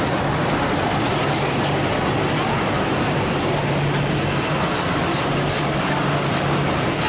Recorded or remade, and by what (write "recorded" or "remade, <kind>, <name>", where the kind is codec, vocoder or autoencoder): recorded